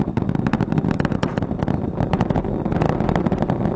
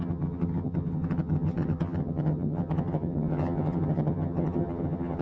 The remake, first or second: second